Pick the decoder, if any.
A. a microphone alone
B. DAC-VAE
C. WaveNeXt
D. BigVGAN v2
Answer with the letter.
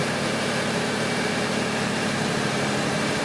D